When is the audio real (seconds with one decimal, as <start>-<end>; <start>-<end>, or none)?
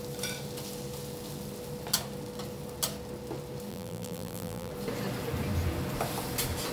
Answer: 0.0-3.7; 4.7-6.7